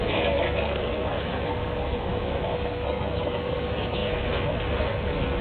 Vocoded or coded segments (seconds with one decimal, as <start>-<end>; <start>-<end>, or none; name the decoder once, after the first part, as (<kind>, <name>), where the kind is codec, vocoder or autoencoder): 0.0-5.4 (codec, SNAC)